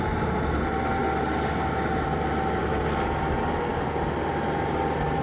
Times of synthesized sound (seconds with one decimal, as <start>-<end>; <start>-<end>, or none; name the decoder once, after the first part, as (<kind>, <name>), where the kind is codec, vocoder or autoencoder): none